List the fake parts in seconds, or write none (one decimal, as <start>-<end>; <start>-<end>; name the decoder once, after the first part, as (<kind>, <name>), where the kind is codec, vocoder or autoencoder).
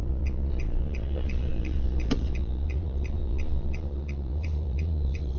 0.0-5.4 (vocoder, Vocos)